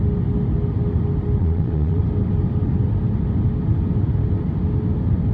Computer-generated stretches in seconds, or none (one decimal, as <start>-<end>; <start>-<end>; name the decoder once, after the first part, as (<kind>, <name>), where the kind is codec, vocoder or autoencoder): 1.4-2.0 (vocoder, Vocos)